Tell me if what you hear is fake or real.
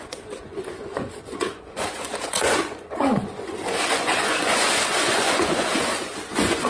fake